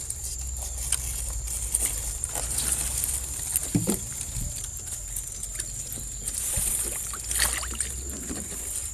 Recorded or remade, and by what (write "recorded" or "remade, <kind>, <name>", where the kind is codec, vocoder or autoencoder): recorded